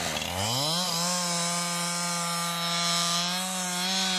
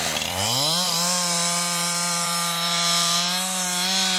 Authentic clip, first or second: first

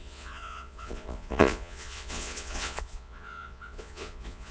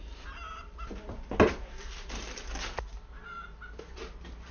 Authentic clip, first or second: second